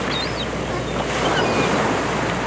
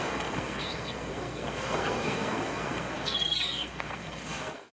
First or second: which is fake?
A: second